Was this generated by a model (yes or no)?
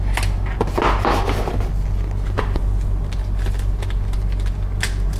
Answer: no